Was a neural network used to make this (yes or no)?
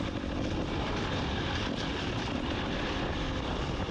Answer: yes